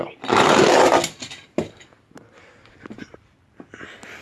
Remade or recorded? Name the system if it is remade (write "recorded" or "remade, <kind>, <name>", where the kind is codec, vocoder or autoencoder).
recorded